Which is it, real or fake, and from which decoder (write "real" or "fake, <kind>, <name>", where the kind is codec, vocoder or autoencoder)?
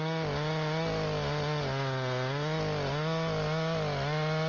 real